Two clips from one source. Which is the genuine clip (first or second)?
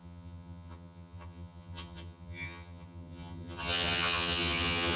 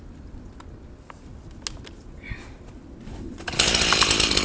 second